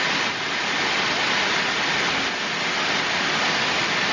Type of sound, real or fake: real